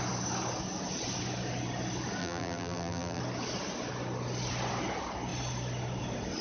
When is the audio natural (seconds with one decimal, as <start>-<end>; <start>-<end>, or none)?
0.0-2.2; 3.2-6.4